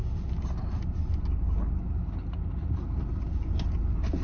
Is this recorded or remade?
recorded